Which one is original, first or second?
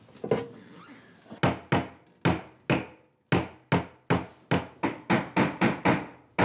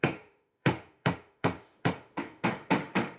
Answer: first